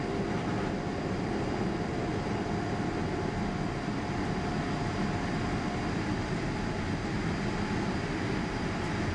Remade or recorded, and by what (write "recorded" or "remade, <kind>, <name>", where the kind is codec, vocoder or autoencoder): recorded